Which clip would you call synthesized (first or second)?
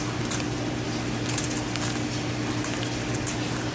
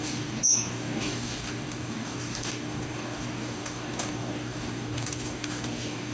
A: second